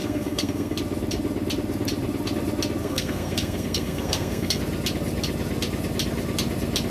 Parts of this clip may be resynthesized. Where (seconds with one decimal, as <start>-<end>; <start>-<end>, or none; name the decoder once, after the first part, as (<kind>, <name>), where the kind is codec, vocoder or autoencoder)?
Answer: 0.0-0.8 (codec, SNAC); 2.8-4.6

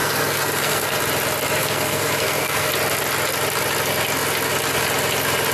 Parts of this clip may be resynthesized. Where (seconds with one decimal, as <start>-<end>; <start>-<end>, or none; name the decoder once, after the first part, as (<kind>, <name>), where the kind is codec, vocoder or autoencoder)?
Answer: 0.0-1.0 (codec, SNAC); 1.6-2.7

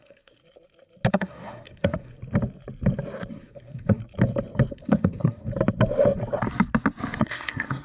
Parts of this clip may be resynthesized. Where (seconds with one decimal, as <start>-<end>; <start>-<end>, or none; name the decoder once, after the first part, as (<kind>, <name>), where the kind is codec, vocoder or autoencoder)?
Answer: 0.0-0.4 (codec, SNAC); 1.1-2.2; 3.3-4.0; 4.7-5.5; 7.2-7.8

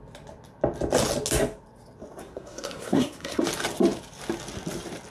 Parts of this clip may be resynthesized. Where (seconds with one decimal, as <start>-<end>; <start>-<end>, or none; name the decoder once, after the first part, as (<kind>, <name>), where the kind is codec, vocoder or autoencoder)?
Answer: 2.2-3.4 (codec, SNAC)

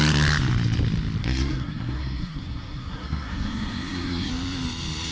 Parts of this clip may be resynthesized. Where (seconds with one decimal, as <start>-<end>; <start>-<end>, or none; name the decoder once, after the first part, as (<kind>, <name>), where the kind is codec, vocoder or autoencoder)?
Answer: 1.2-4.3 (codec, SNAC)

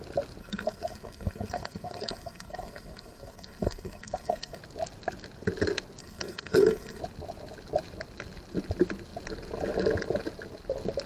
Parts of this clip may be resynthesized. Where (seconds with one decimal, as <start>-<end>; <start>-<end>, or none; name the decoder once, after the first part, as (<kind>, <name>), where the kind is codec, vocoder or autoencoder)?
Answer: 0.4-4.6 (codec, SNAC); 6.0-7.0